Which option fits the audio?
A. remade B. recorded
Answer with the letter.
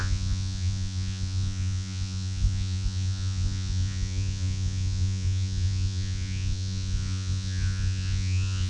A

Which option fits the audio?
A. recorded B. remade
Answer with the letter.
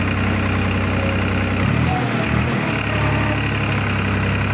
A